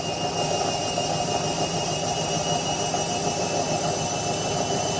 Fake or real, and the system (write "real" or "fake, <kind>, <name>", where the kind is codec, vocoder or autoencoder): real